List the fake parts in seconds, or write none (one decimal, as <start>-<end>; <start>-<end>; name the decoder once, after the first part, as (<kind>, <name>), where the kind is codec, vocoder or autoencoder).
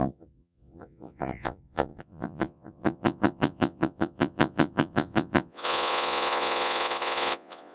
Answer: 0.0-7.7 (vocoder, Vocos)